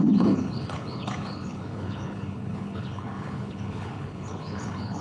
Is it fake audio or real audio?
fake